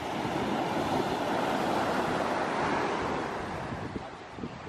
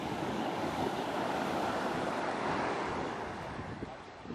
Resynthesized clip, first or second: second